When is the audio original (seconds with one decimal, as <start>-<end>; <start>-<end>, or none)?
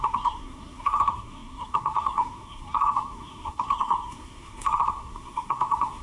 none